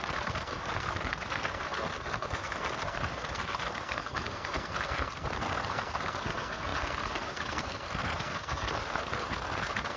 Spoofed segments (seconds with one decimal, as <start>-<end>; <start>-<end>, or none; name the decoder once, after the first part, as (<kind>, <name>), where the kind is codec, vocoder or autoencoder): 0.0-10.0 (codec, SNAC)